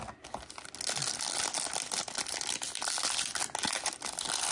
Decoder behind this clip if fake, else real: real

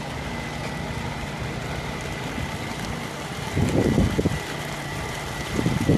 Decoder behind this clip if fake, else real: real